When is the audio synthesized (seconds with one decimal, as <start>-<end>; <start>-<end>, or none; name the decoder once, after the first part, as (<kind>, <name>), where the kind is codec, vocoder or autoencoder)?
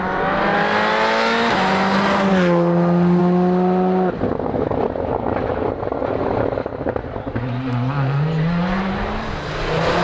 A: none